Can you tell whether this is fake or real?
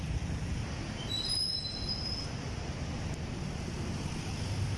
real